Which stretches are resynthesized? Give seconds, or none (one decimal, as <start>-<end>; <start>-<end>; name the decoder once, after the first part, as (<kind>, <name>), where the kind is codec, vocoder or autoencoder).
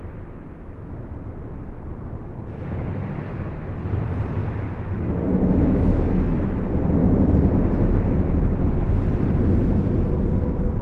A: 4.4-6.6 (autoencoder, DAC-VAE)